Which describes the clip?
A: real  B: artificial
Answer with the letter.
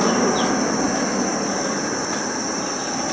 A